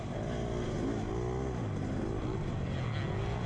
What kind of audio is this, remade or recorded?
recorded